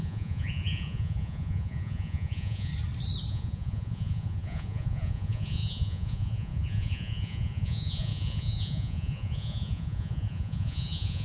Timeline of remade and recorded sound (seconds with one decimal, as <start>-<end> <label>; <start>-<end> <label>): 0.0-2.7 remade; 2.7-3.3 recorded; 3.3-11.2 remade

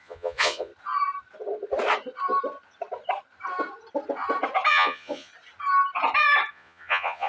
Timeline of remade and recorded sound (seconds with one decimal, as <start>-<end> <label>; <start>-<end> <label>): 0.0-0.7 remade; 0.7-4.7 recorded; 4.7-5.3 remade; 5.3-6.5 recorded; 6.5-7.3 remade

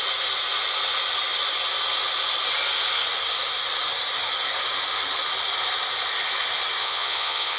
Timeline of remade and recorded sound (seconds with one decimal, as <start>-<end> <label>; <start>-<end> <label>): 0.0-6.8 recorded; 6.8-7.6 remade

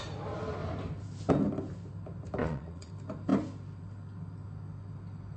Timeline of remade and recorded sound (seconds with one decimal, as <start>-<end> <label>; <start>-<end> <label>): 0.0-2.4 recorded; 2.4-2.9 remade; 2.9-5.4 recorded

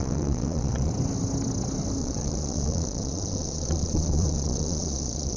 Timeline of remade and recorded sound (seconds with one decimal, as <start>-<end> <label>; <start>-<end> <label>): 0.0-0.9 remade; 0.9-2.0 recorded; 2.0-5.4 remade